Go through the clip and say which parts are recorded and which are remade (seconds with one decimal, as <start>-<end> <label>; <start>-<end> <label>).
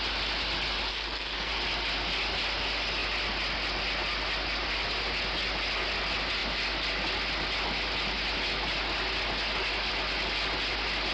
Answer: 0.0-0.9 recorded; 0.9-1.5 remade; 1.5-11.1 recorded